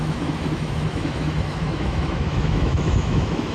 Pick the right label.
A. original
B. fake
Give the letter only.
B